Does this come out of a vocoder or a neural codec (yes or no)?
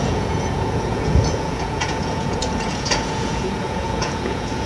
yes